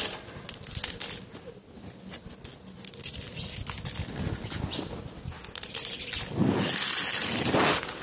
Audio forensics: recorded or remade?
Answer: recorded